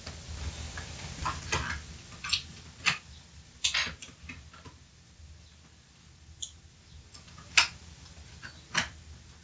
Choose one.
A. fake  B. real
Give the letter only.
B